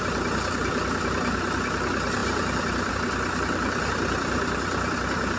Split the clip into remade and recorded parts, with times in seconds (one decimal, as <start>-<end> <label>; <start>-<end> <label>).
0.0-5.4 recorded